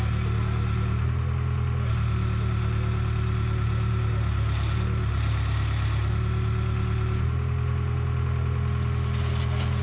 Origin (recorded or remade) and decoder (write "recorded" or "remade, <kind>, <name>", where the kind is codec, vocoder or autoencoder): recorded